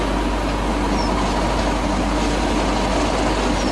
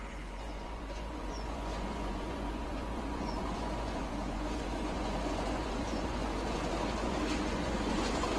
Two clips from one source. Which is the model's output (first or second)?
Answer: second